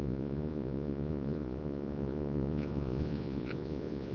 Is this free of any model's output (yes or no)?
no